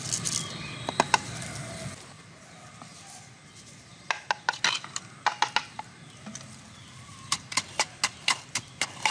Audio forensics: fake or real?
real